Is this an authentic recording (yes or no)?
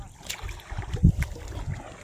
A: yes